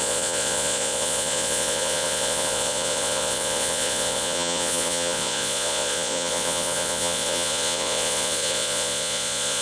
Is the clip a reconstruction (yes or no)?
yes